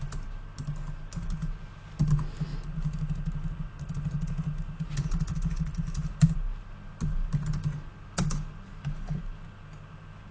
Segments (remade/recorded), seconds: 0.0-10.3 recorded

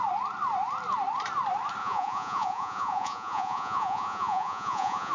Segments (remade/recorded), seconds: 0.0-1.8 recorded; 1.8-5.1 remade

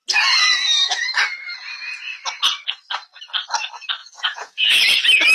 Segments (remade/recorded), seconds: 0.0-4.0 recorded; 4.0-4.7 remade; 4.7-5.3 recorded

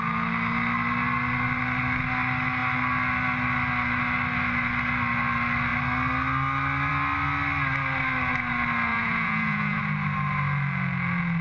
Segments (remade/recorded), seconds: 0.0-8.9 recorded; 8.9-9.8 remade; 9.8-11.4 recorded

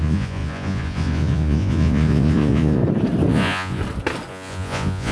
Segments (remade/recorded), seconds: 0.0-2.8 remade; 2.8-3.3 recorded; 3.3-3.8 remade; 3.8-4.3 recorded; 4.3-5.1 remade

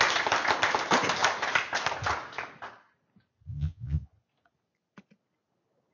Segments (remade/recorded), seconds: 0.0-3.5 recorded; 3.5-4.1 remade; 4.1-5.9 recorded